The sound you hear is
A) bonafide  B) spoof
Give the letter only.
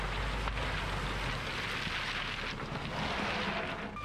A